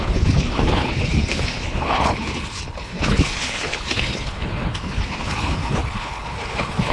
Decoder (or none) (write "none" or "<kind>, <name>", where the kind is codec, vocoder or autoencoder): codec, HILCodec